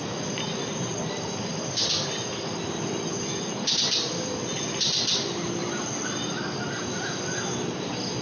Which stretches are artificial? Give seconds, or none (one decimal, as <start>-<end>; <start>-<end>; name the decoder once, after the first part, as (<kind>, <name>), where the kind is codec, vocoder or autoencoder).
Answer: 5.6-7.3 (vocoder, BigVGAN v2)